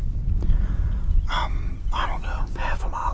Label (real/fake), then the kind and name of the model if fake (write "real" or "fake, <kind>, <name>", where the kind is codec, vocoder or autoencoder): real